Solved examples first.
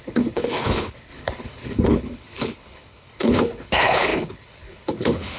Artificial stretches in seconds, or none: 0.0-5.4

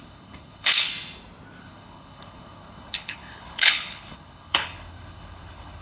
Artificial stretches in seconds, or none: 0.0-0.9; 1.6-5.8

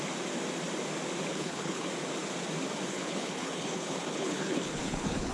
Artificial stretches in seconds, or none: 1.3-1.9; 2.9-5.3

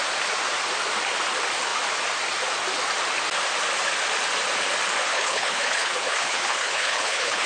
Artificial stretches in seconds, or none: 5.1-7.5

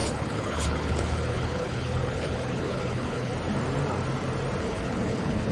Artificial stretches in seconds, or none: 0.0-3.3; 4.6-5.5

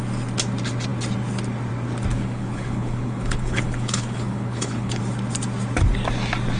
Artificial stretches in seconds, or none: 2.1-5.0